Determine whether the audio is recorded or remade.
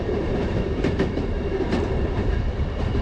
remade